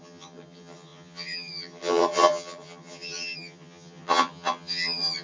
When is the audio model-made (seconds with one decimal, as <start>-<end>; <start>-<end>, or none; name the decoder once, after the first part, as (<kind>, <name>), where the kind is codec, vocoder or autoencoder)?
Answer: 0.0-5.2 (vocoder, HiFi-GAN)